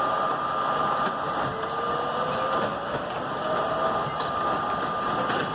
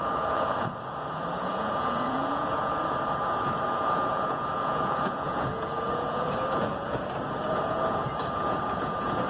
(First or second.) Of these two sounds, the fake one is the second